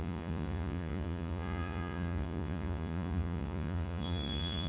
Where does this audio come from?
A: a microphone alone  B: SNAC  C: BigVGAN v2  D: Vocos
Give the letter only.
D